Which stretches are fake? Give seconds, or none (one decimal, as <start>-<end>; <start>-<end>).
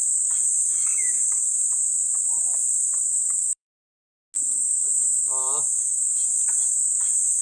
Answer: 1.9-3.8